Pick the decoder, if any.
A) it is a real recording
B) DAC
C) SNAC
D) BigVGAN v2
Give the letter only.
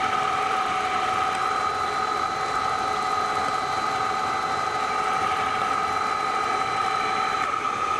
A